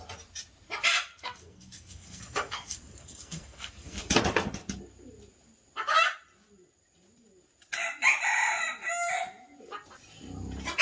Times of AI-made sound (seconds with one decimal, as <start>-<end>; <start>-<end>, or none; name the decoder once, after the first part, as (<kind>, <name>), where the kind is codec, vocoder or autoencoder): 1.1-4.1 (codec, SNAC)